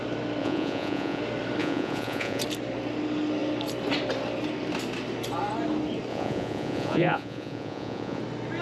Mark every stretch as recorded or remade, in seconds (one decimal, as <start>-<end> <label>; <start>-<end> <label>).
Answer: 0.0-0.4 recorded; 0.4-1.2 remade; 1.2-1.6 recorded; 1.6-2.4 remade; 2.4-6.1 recorded; 6.1-8.2 remade; 8.2-8.6 recorded